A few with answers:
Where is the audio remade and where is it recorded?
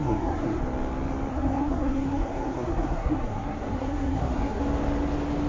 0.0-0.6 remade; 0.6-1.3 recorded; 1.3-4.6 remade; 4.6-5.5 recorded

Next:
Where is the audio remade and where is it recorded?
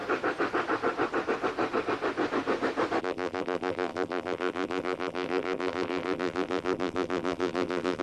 0.0-3.0 recorded; 3.0-8.0 remade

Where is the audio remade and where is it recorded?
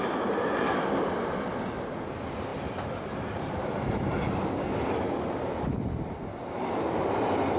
0.0-7.6 recorded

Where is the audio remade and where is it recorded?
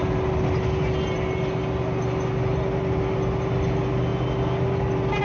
0.0-5.2 recorded